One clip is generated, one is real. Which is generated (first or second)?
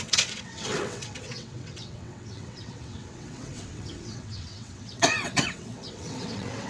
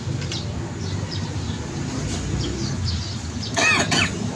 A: first